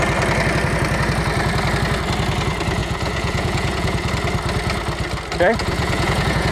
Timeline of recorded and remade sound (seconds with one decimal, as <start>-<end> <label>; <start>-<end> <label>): 0.0-2.8 recorded; 2.8-4.1 remade; 4.1-5.6 recorded; 5.6-6.5 remade

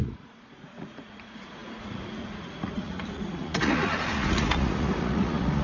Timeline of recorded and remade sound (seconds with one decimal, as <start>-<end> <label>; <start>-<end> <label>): 0.0-5.6 remade

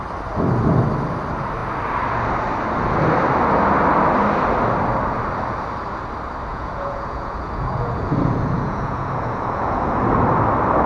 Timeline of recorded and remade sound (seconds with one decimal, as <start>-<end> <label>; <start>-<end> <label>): 0.0-6.5 recorded; 6.5-10.0 remade; 10.0-10.9 recorded